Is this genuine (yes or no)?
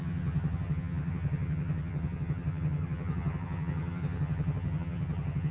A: no